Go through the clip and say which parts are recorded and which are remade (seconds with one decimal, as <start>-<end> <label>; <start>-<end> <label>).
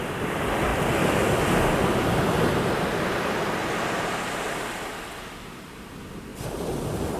0.0-7.2 recorded